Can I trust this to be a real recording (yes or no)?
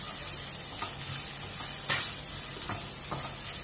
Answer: yes